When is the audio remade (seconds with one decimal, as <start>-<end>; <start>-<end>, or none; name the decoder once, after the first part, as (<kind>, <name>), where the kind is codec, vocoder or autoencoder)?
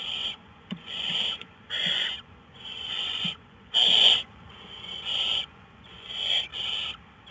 0.0-6.5 (vocoder, Vocos)